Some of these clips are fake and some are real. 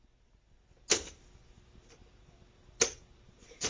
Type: real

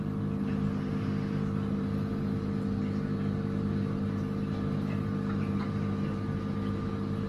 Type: real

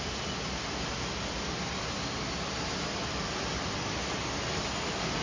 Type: real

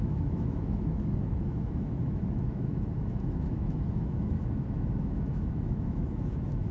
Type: fake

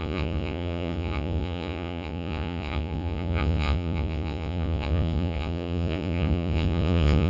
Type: fake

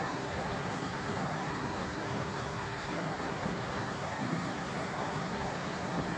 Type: fake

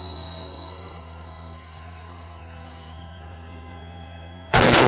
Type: fake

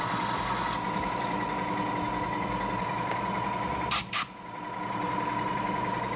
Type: real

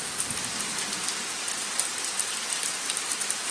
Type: real